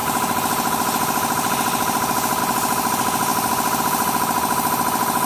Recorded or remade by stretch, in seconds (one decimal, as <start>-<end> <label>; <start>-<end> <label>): 0.0-5.3 recorded